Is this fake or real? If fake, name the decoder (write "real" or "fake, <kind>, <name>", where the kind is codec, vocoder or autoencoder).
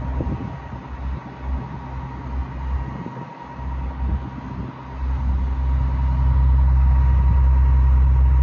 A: real